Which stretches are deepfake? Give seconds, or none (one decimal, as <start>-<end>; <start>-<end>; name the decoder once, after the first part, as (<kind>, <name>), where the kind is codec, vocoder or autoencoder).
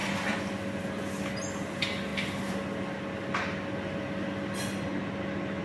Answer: none